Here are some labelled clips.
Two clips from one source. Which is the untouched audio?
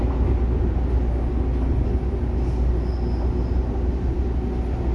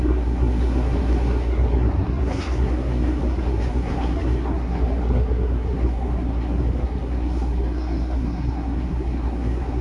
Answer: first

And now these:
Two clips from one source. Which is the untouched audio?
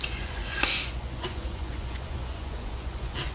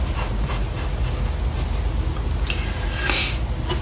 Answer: second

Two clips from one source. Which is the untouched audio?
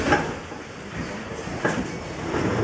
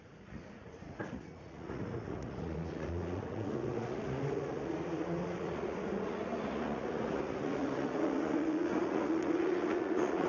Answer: first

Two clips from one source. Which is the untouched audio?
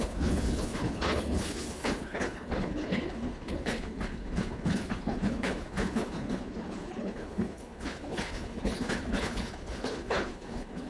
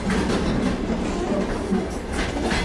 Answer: second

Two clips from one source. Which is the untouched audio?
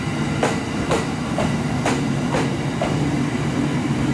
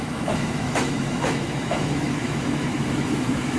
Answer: first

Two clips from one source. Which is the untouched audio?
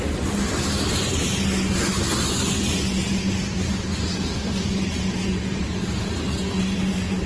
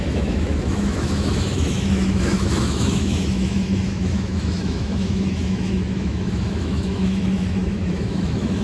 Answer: first